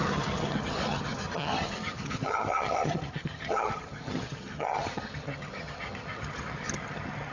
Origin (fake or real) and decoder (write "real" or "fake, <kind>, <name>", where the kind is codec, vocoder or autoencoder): fake, vocoder, HiFi-GAN